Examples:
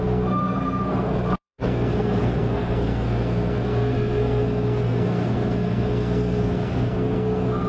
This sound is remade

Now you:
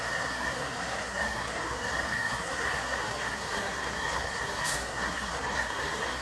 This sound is remade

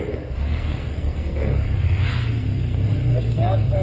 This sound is remade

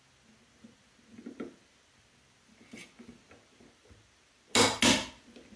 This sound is recorded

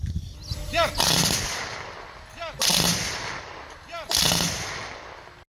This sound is recorded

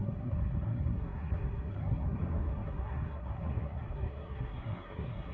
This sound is remade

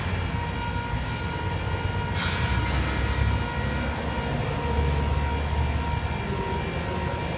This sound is recorded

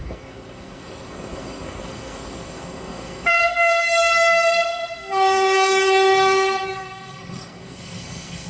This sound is remade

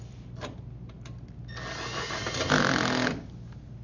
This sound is recorded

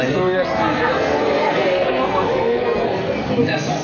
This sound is remade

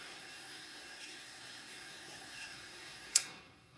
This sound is remade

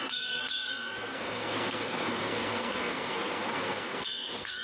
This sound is remade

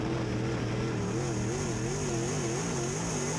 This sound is recorded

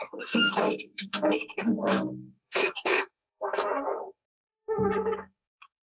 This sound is remade